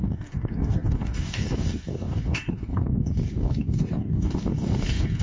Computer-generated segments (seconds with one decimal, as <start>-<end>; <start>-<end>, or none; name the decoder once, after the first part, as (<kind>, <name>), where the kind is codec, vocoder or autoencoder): 0.0-5.2 (codec, DAC)